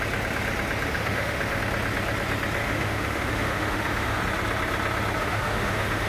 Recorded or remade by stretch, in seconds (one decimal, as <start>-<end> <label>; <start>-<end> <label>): 0.0-0.9 recorded; 0.9-1.6 remade; 1.6-2.6 recorded; 2.6-4.2 remade; 4.2-5.2 recorded; 5.2-6.1 remade